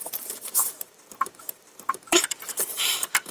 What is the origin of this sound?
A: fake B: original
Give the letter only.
A